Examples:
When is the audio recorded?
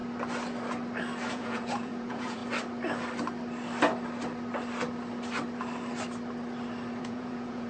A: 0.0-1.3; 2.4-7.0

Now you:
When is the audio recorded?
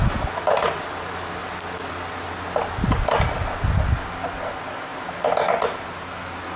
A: 0.0-6.6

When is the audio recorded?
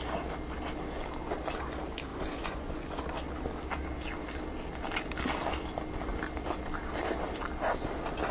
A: 0.0-2.1; 3.0-8.3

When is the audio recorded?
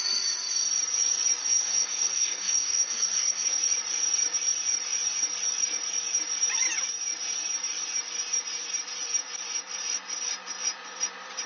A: 0.0-1.4; 3.6-11.5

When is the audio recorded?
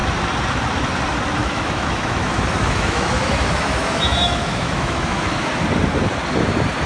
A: 0.0-1.4; 5.5-6.9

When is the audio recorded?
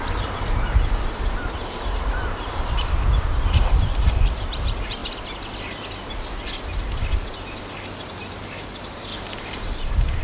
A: 5.0-8.1; 9.1-9.7